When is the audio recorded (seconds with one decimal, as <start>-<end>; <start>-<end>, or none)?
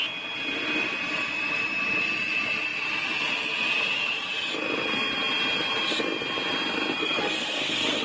0.0-7.0